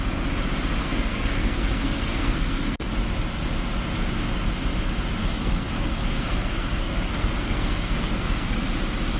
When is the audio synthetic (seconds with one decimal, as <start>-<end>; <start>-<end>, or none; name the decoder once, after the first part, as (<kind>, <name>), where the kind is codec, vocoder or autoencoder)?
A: 0.8-2.9 (codec, SNAC); 5.2-8.6